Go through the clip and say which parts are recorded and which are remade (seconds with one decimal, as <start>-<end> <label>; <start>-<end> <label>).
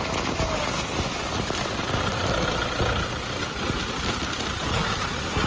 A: 0.0-5.5 recorded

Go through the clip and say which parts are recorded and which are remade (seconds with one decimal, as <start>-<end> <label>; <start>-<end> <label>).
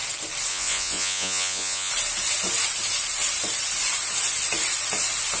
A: 0.0-0.5 recorded; 0.5-1.9 remade; 1.9-5.4 recorded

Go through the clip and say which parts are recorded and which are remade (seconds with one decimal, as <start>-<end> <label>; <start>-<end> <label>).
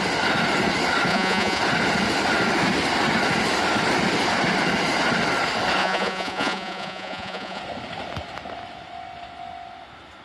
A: 0.0-1.1 recorded; 1.1-1.6 remade; 1.6-5.8 recorded; 5.8-7.6 remade; 7.6-10.2 recorded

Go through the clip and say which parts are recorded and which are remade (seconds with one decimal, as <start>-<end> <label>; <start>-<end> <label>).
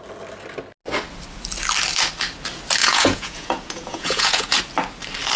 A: 0.0-2.8 recorded; 2.8-4.6 remade; 4.6-5.4 recorded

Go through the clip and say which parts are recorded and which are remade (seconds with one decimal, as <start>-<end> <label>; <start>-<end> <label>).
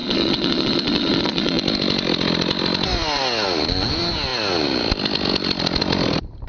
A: 0.0-1.6 remade; 1.6-6.5 recorded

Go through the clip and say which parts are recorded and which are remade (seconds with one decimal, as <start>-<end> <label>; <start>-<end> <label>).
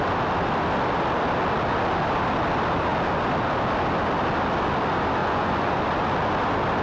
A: 0.0-5.2 recorded; 5.2-5.8 remade; 5.8-6.8 recorded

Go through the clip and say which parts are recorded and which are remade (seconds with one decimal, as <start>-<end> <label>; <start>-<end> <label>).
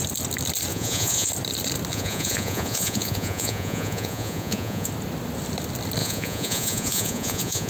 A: 0.0-0.7 recorded; 0.7-1.3 remade; 1.3-1.9 recorded; 1.9-4.9 remade; 4.9-6.0 recorded; 6.0-7.7 remade